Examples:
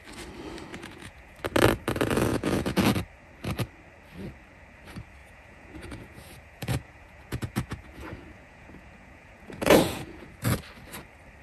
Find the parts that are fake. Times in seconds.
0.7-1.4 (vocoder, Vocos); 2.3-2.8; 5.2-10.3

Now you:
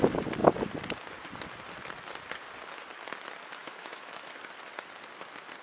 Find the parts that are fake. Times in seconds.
3.6-4.4 (autoencoder, DAC-VAE)

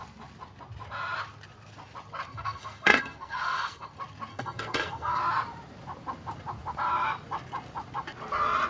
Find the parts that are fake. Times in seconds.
2.3-3.9 (codec, SNAC); 4.3-5.2

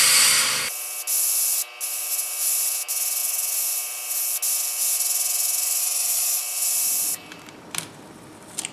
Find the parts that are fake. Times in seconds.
5.8-6.4 (codec, DAC)

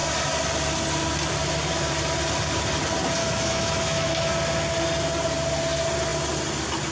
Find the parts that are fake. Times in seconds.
3.2-4.3 (autoencoder, DAC-VAE)

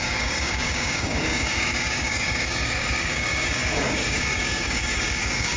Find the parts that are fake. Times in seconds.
0.0-5.6 (codec, DAC)

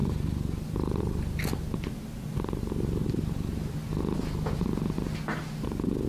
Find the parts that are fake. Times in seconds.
none

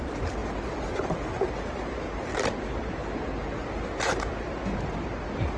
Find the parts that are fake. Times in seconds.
none